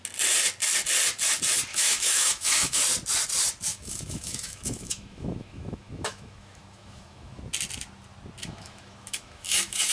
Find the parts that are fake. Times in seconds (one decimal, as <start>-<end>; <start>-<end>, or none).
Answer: 1.7-2.8; 3.7-7.4; 8.4-9.9

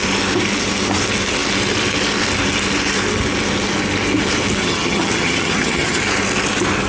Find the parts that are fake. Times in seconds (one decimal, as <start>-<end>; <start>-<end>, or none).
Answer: 4.6-6.0

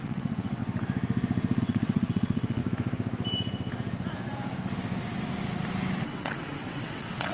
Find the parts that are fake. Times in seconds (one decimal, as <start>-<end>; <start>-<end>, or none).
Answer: 0.0-0.6; 1.6-2.6; 6.0-7.3

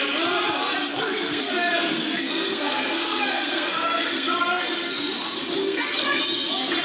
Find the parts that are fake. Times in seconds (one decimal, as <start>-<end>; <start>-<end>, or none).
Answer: 0.9-4.6; 5.6-6.2

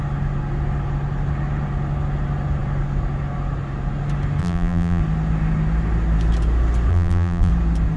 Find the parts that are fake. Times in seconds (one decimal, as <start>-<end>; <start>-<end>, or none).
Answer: 4.4-5.0; 6.9-7.5

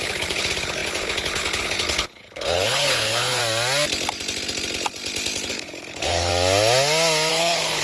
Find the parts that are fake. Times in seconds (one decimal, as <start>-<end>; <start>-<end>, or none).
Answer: 0.0-3.4; 5.5-6.3; 7.3-7.8

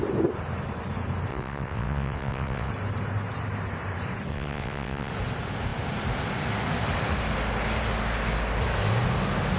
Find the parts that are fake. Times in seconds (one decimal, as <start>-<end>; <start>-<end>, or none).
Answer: 1.3-2.7; 4.3-5.1

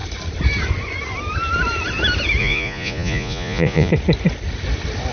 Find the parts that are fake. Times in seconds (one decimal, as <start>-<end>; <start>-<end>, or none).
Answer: 2.4-3.9